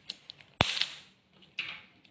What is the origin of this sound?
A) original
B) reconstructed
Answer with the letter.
A